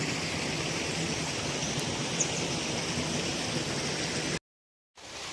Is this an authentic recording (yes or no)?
yes